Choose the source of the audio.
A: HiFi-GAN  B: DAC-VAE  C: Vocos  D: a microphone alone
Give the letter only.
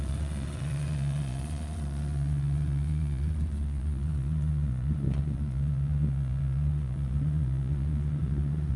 C